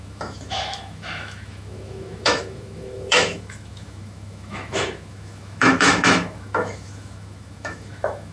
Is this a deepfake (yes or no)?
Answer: yes